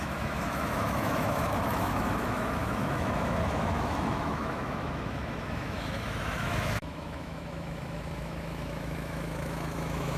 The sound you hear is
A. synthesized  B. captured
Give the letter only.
A